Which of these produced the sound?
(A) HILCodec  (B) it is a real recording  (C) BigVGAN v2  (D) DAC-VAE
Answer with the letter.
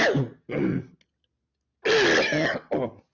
B